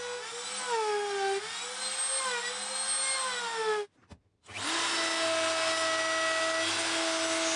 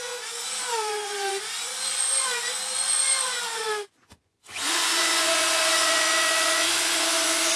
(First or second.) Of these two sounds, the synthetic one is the second